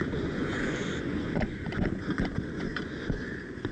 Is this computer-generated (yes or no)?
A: yes